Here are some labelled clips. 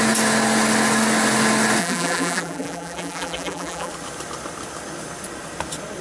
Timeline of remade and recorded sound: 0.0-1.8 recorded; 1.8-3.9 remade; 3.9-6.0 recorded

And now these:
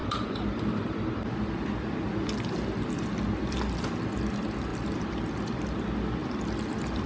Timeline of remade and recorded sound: 0.0-4.3 remade; 4.3-4.7 recorded; 4.7-5.3 remade; 5.3-6.2 recorded; 6.2-7.1 remade

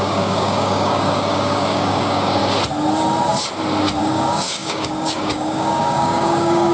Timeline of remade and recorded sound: 0.0-2.4 remade; 2.4-4.0 recorded; 4.0-6.7 remade

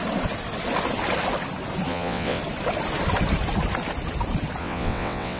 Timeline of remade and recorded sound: 0.0-1.9 recorded; 1.9-2.4 remade; 2.4-4.6 recorded; 4.6-5.4 remade

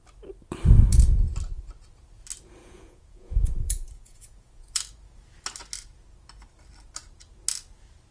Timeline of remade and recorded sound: 0.0-2.6 recorded; 2.6-4.8 remade; 4.8-8.1 recorded

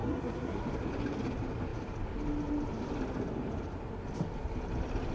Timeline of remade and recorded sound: 0.0-0.6 remade; 0.6-5.1 recorded

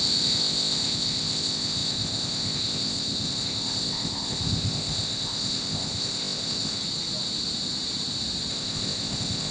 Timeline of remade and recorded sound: 0.0-6.8 remade; 6.8-8.5 recorded; 8.5-9.5 remade

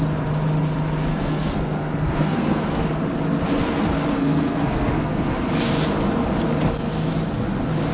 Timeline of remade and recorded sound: 0.0-1.1 recorded; 1.1-2.9 remade; 2.9-4.1 recorded; 4.1-5.3 remade; 5.3-7.9 recorded